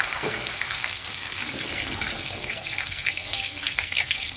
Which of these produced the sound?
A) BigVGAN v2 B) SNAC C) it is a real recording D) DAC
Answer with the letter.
B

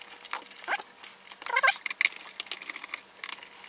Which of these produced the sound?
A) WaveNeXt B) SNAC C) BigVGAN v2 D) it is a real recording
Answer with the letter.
D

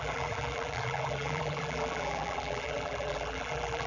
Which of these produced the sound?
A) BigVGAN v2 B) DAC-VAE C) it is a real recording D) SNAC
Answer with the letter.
A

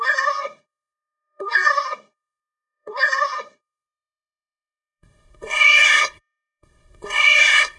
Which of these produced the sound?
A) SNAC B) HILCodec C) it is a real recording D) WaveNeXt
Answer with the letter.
A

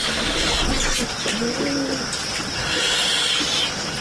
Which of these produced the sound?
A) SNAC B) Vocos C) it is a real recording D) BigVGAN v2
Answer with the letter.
C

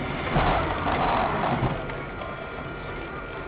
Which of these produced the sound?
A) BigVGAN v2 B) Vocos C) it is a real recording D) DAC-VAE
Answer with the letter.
A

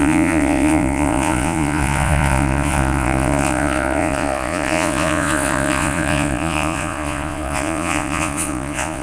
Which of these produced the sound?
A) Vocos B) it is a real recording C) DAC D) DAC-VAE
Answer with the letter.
A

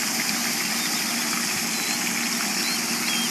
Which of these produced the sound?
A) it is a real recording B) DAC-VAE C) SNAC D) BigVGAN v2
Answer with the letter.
A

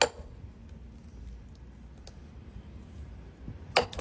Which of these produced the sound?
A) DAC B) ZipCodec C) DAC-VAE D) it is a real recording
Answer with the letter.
D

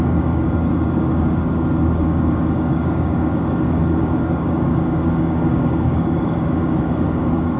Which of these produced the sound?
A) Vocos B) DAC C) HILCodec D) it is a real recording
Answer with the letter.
B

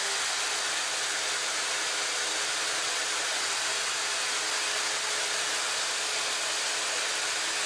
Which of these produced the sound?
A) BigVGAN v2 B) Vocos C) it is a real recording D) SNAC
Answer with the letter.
C